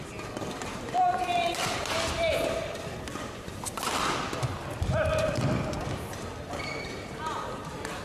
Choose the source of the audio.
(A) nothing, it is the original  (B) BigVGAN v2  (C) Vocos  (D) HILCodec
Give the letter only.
B